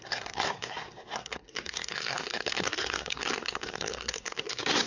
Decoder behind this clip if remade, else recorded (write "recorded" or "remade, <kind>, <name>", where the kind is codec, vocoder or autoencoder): remade, codec, SNAC